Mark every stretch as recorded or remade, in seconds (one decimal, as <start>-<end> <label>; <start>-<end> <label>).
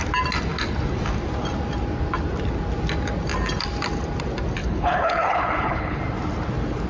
0.0-4.6 recorded; 4.6-6.0 remade; 6.0-6.9 recorded